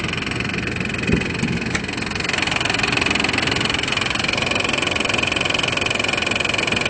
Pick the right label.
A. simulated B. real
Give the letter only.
B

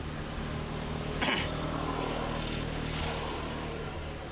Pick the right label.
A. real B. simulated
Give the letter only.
A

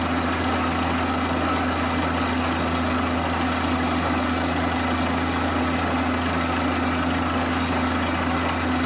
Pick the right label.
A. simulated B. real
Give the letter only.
B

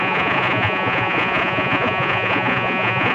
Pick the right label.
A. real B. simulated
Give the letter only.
B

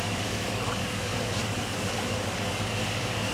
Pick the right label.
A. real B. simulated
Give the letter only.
B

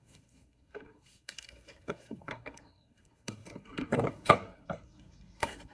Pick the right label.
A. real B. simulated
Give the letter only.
B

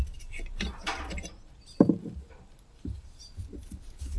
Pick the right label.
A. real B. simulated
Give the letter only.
B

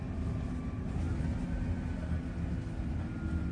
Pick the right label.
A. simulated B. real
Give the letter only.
B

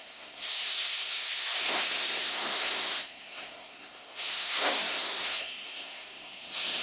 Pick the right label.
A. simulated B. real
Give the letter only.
A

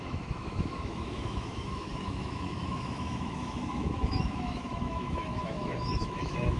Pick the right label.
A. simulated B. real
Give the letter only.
A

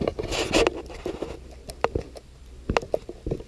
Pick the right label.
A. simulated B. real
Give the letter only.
B